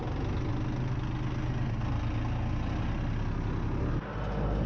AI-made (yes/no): no